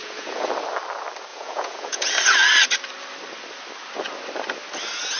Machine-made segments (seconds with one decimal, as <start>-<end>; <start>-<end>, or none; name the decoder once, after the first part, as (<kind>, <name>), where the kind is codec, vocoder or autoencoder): 0.0-0.5 (vocoder, Vocos); 1.3-2.1